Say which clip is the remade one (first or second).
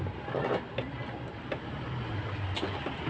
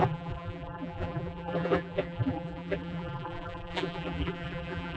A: second